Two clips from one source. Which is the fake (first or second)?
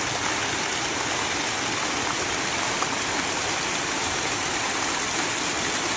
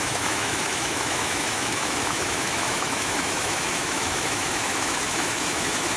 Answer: second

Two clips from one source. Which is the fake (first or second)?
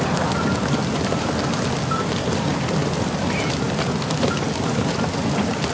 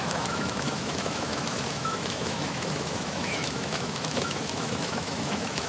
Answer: second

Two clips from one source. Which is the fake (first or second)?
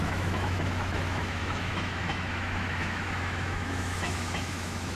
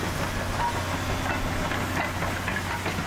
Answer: first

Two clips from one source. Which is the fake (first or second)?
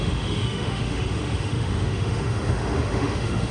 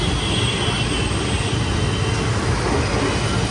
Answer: first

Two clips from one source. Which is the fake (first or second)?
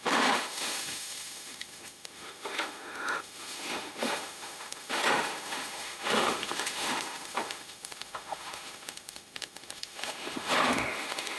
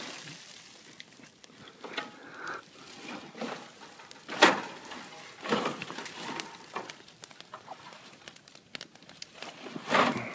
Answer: first